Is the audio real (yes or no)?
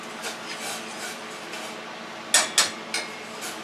yes